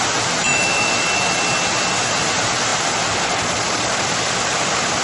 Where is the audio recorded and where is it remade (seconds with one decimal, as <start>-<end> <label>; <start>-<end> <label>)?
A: 0.0-0.4 recorded; 0.4-0.9 remade; 0.9-5.0 recorded

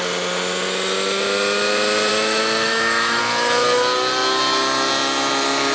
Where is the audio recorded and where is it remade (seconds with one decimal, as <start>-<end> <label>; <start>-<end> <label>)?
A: 0.0-2.1 recorded; 2.1-3.2 remade; 3.2-5.7 recorded

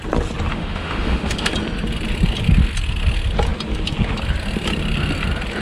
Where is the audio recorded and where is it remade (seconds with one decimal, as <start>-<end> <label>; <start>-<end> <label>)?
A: 0.0-0.5 recorded; 0.5-1.5 remade; 1.5-5.6 recorded